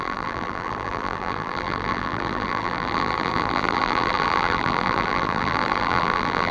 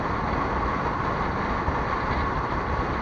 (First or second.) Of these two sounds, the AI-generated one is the first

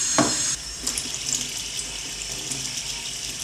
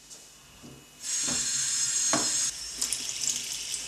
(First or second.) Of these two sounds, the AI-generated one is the first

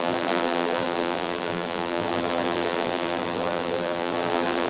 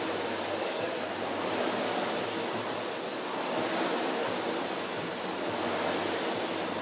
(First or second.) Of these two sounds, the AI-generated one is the first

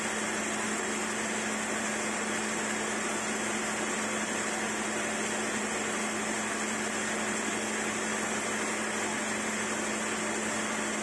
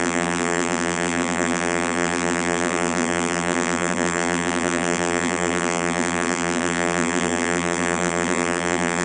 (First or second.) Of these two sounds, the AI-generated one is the second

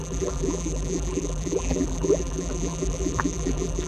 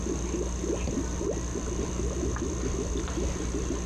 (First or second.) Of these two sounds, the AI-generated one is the first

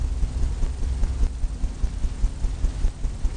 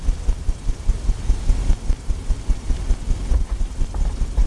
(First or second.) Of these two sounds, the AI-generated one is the second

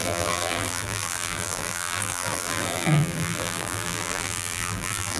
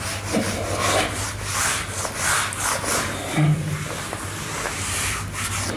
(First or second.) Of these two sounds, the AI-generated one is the first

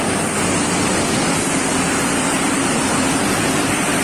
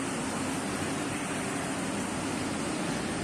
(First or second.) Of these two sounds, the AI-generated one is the first